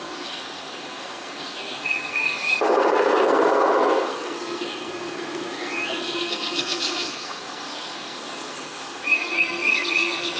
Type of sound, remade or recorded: remade